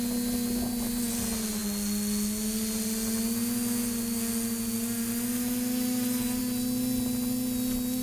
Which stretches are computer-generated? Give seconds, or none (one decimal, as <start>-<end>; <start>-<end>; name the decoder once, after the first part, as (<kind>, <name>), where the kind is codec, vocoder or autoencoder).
none